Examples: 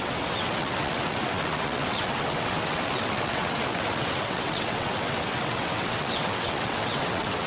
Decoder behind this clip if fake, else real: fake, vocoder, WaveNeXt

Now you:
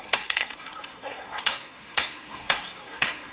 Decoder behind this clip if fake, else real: fake, codec, SNAC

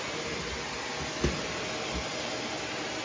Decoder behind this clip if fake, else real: real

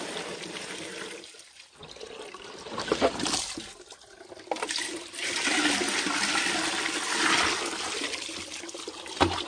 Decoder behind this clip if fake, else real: real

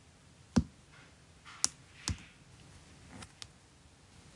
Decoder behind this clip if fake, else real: real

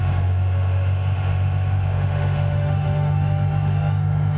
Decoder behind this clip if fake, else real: fake, autoencoder, DAC-VAE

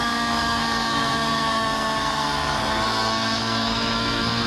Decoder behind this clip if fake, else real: fake, codec, SNAC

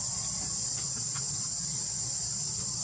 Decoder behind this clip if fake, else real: fake, vocoder, Vocos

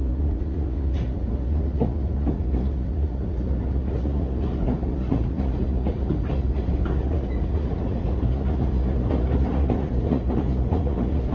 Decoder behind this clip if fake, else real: fake, vocoder, Vocos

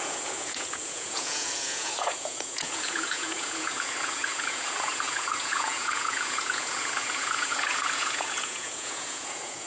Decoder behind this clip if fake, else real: fake, vocoder, Vocos